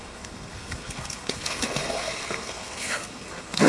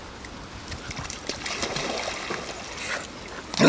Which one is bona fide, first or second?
second